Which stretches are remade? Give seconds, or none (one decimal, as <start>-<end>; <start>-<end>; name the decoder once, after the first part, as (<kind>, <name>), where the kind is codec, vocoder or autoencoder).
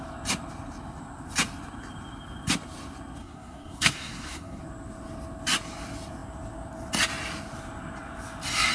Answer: 3.2-4.6 (codec, SNAC)